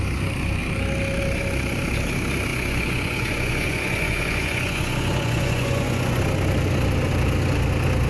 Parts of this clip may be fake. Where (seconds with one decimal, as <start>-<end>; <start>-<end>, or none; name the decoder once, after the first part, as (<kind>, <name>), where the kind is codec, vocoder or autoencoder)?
2.5-6.2 (vocoder, Vocos)